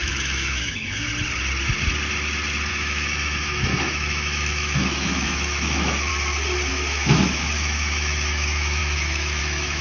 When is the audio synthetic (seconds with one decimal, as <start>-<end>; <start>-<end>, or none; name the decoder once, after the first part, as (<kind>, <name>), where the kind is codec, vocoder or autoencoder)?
0.0-1.1 (autoencoder, DAC-VAE); 2.7-6.1; 6.7-9.8